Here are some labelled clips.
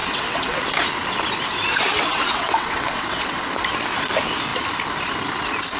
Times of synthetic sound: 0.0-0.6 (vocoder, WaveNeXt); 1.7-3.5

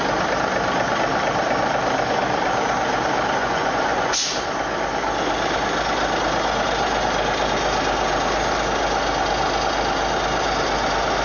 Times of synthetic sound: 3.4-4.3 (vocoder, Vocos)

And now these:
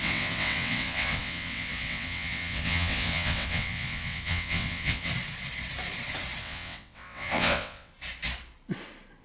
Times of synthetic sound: 0.0-5.1 (vocoder, WaveNeXt); 6.4-7.9

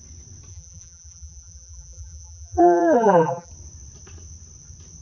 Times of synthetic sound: 0.5-3.5 (vocoder, BigVGAN v2)

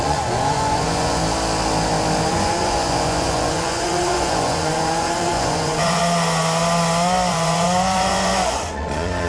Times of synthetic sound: 0.0-1.2 (vocoder, Vocos); 2.3-6.0; 7.3-9.3